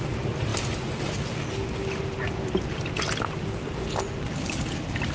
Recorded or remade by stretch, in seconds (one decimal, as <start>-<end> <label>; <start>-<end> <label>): 0.0-5.1 recorded